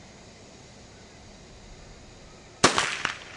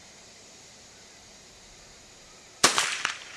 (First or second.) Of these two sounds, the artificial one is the second